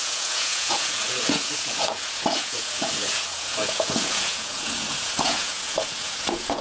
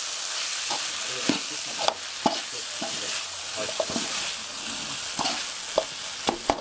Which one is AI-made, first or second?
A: first